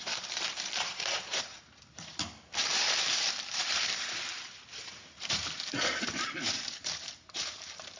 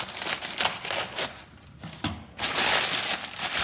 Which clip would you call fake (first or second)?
first